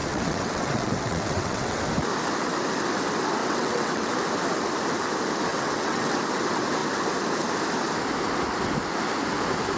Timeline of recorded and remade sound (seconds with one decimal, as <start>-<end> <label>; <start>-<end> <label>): 0.0-1.8 remade; 1.8-3.4 recorded; 3.4-4.1 remade; 4.1-5.5 recorded; 5.5-6.2 remade; 6.2-9.8 recorded

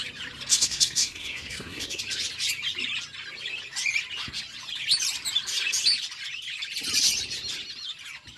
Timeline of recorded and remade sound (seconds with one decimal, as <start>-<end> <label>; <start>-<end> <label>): 0.0-0.5 recorded; 0.5-2.0 remade; 2.0-8.4 recorded

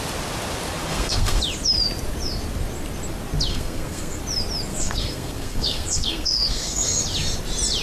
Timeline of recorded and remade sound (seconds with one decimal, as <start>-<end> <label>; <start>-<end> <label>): 0.0-0.9 recorded; 0.9-1.4 remade; 1.4-3.5 recorded; 3.5-4.2 remade; 4.2-4.7 recorded; 4.7-7.0 remade; 7.0-7.8 recorded

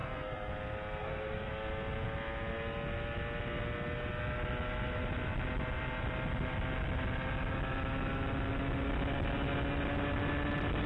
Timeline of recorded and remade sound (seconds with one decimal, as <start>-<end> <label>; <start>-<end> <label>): 0.0-0.5 remade; 0.5-1.0 recorded; 1.0-1.5 remade; 1.5-10.9 recorded

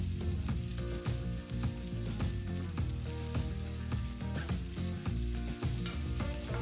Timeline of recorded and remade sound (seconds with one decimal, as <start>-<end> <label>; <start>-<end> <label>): 0.0-6.6 recorded